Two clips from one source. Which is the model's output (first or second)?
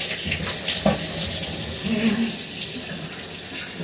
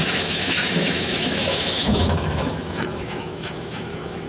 second